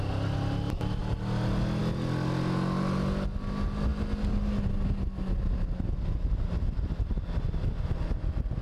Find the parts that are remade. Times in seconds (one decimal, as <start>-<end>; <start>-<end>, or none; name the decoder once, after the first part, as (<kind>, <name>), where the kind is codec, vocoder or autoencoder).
none